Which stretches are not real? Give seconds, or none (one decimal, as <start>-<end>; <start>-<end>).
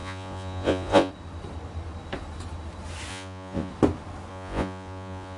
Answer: 0.0-1.1; 3.1-3.7; 4.3-5.4